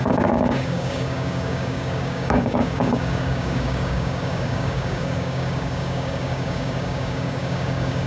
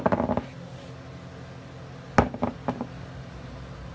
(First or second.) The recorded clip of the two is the second